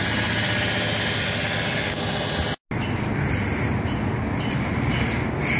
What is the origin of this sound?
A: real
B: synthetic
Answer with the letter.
A